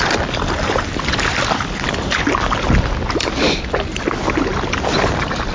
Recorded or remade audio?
recorded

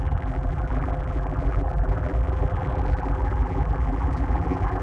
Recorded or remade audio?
remade